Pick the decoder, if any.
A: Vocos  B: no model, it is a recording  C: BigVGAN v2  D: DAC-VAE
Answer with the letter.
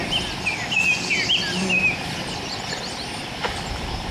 B